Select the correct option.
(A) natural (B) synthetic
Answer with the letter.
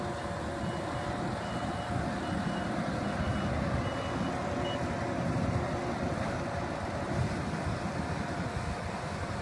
A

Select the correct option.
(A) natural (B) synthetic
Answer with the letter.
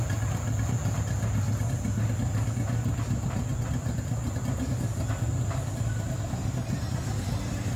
A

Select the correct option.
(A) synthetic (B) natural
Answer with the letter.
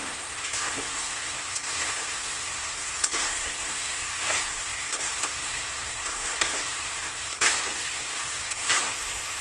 A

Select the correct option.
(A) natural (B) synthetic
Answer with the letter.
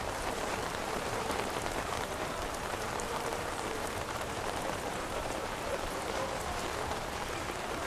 B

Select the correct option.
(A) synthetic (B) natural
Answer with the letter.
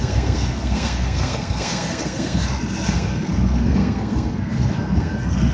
A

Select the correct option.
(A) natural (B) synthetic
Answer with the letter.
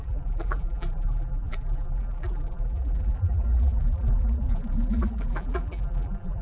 B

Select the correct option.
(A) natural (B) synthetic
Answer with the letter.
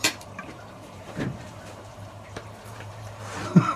B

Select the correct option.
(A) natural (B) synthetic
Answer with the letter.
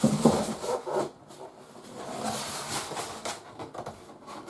A